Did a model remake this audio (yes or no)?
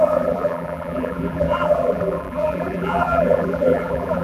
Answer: yes